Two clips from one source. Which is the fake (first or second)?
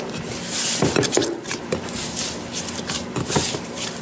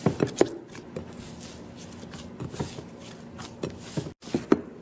first